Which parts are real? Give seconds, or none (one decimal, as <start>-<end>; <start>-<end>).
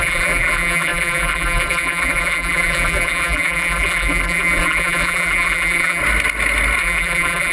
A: 6.0-6.8